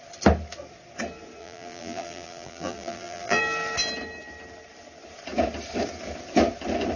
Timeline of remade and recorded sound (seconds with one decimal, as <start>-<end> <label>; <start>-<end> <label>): 0.0-1.4 recorded; 1.4-3.4 remade; 3.4-7.0 recorded